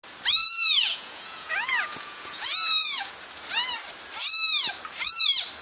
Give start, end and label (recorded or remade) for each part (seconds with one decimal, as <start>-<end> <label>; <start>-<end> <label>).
0.0-0.4 recorded; 0.4-3.1 remade; 3.1-5.6 recorded